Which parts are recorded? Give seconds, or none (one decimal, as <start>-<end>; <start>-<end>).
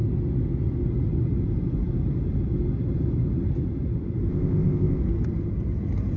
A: 0.0-4.3; 5.0-6.2